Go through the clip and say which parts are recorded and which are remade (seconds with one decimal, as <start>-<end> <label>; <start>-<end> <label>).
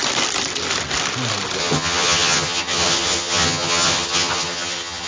0.0-1.6 recorded; 1.6-5.1 remade